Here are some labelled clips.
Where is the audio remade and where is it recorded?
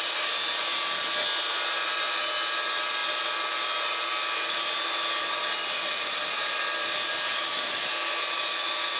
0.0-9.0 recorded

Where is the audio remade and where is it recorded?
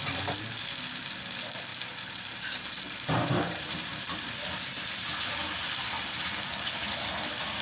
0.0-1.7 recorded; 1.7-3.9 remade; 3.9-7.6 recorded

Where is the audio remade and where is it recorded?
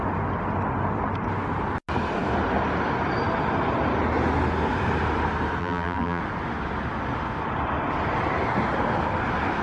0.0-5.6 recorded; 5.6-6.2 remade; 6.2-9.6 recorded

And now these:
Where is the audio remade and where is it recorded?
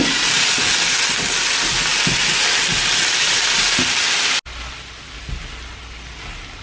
0.0-6.6 recorded